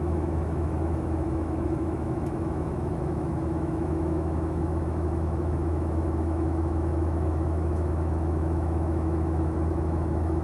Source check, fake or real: fake